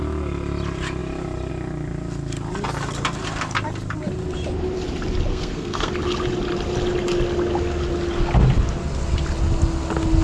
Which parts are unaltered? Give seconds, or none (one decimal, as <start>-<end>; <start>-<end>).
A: 0.0-5.3; 5.9-10.2